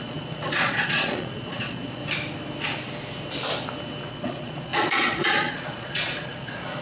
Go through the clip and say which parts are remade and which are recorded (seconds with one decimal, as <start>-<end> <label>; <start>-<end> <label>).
0.0-2.0 remade; 2.0-4.1 recorded; 4.1-6.8 remade